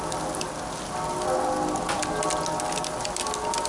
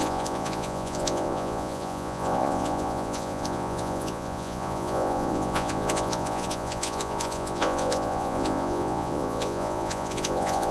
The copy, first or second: second